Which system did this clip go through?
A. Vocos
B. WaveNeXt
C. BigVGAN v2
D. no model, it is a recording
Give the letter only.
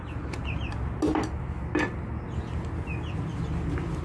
D